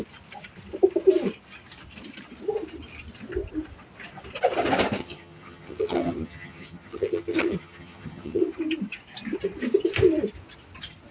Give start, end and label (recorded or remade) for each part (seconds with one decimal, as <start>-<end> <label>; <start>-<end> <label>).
0.0-5.0 recorded; 5.0-8.4 remade; 8.4-11.1 recorded